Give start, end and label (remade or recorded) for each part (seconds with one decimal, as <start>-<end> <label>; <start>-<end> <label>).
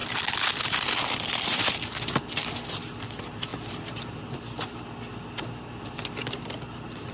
0.0-1.8 remade; 1.8-3.5 recorded; 3.5-4.1 remade; 4.1-7.1 recorded